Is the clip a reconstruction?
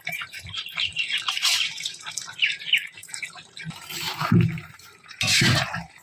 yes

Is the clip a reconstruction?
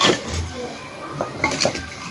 yes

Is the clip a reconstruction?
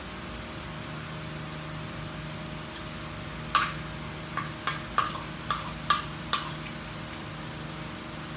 no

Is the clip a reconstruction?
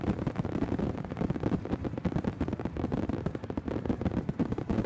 yes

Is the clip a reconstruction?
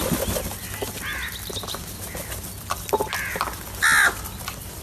no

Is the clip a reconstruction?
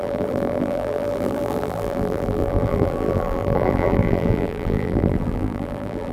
yes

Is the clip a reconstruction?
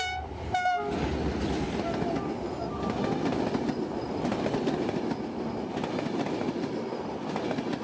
no